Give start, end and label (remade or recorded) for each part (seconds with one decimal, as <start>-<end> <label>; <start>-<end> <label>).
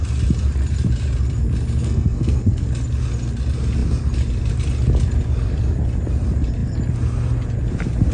0.0-1.8 recorded; 1.8-2.7 remade; 2.7-8.1 recorded